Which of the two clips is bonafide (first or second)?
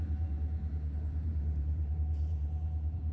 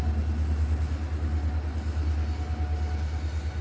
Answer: second